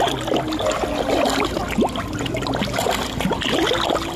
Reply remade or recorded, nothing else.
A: recorded